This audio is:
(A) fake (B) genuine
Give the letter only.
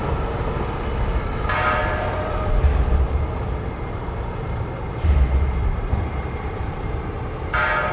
A